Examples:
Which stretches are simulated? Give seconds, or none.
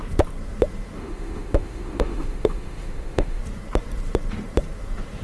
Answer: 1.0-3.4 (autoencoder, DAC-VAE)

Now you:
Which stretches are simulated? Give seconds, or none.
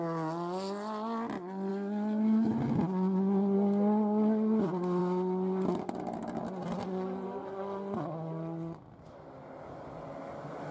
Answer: 1.7-2.5 (autoencoder, DAC-VAE)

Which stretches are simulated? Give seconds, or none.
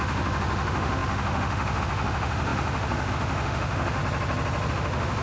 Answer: 0.0-4.0 (autoencoder, DAC-VAE); 4.7-5.2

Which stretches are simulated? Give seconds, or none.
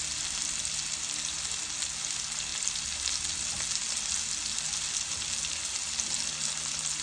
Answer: none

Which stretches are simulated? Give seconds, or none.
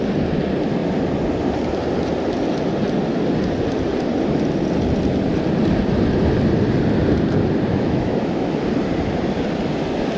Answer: 7.7-8.6 (autoencoder, DAC-VAE)